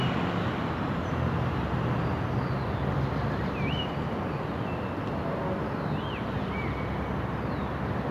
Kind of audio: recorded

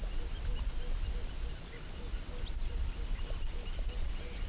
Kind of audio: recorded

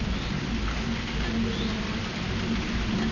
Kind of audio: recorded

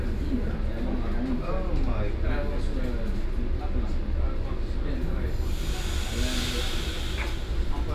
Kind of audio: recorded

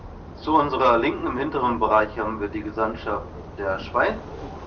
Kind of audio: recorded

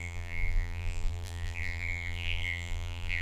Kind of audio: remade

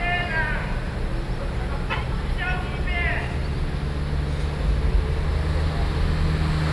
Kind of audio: recorded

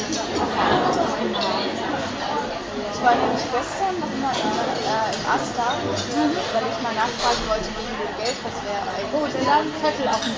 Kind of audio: recorded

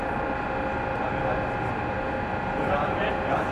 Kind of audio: recorded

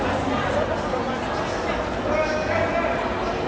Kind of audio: recorded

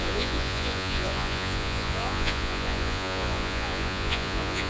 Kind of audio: remade